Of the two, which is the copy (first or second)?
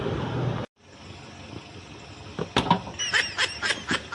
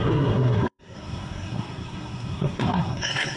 second